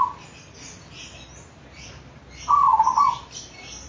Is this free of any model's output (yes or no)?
yes